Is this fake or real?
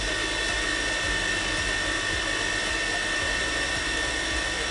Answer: real